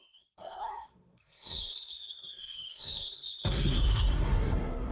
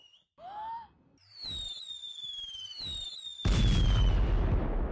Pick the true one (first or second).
second